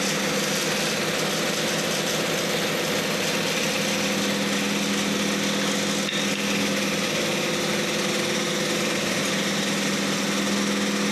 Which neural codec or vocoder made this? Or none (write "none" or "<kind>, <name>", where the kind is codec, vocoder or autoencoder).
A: none